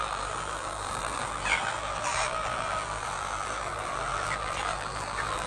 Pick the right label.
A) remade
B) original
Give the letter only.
A